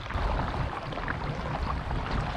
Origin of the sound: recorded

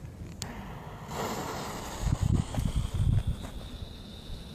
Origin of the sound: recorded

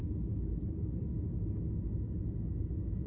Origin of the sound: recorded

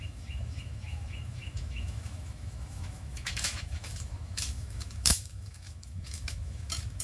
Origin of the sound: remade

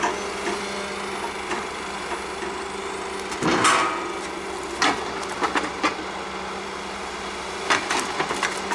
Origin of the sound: recorded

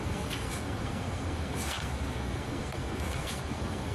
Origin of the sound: remade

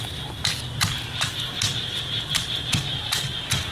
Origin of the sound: recorded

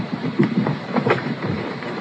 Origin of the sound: remade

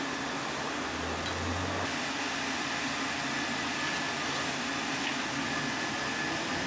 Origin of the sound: recorded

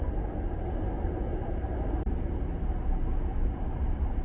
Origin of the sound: recorded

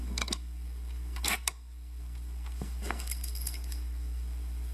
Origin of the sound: remade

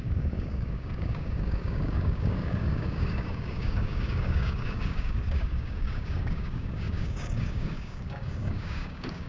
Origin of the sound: remade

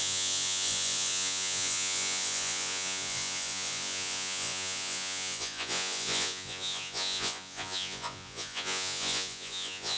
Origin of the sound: remade